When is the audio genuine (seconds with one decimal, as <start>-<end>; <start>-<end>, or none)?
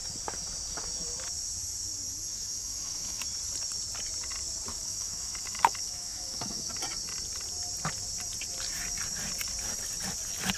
0.0-2.3; 3.2-4.7; 6.7-10.6